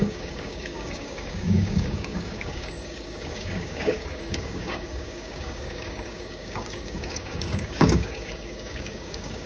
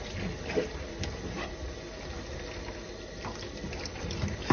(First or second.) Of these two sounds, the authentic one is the second